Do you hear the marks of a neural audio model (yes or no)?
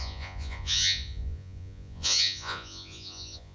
yes